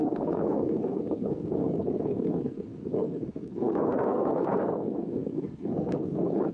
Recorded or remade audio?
remade